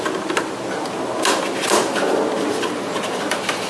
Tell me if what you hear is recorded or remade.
recorded